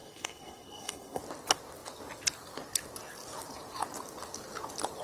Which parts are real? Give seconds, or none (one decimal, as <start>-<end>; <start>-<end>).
1.2-5.0